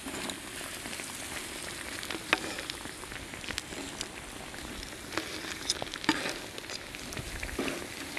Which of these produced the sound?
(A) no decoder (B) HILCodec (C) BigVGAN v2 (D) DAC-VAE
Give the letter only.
A